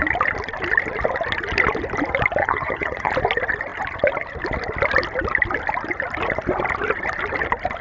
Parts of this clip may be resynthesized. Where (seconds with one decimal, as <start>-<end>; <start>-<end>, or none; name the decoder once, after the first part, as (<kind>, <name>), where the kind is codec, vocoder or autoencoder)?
2.4-3.1 (vocoder, HiFi-GAN)